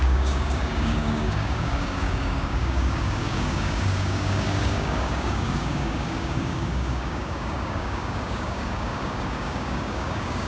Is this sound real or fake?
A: fake